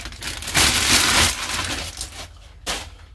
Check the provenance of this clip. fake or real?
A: real